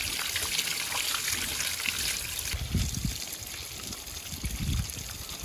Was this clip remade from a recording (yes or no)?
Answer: no